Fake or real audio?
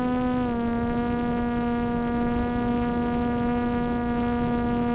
real